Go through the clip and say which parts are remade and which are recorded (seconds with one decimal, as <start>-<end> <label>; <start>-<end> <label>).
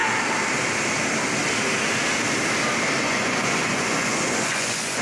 0.0-3.0 recorded; 3.0-5.0 remade